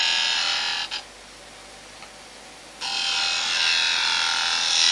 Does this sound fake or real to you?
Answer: real